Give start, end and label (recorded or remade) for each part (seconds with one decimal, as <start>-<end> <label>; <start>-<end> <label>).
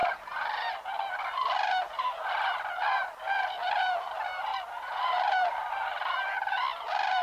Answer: 0.0-7.2 remade